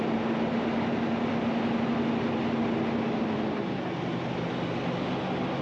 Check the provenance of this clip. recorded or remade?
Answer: recorded